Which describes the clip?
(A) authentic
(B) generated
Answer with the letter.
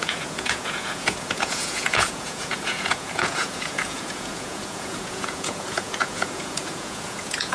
B